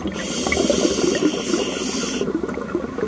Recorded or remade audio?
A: recorded